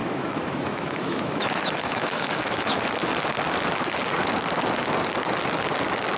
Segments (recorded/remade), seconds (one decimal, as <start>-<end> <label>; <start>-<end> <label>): 0.0-2.9 remade; 2.9-6.2 recorded